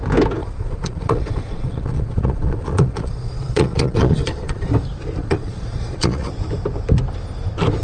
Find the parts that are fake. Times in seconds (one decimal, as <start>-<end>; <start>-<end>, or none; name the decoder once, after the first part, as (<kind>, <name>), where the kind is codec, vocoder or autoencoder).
0.4-4.7 (vocoder, Vocos); 5.2-6.3